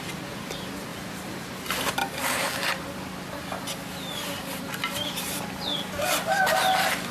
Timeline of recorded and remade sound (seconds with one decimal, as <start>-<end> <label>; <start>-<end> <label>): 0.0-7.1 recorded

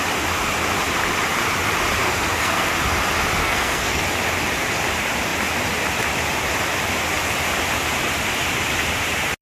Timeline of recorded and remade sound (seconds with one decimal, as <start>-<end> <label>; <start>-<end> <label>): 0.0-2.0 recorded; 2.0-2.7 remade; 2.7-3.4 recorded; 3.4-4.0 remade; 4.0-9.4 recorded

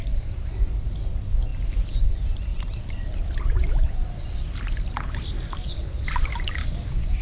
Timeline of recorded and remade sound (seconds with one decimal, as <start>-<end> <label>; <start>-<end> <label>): 0.0-6.6 recorded; 6.6-7.2 remade

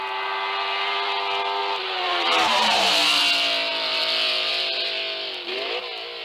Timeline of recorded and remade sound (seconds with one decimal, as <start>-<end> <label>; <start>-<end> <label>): 0.0-1.6 recorded; 1.6-3.2 remade; 3.2-6.2 recorded